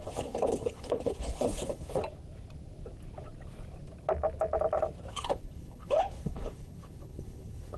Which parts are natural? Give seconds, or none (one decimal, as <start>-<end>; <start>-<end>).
2.0-5.1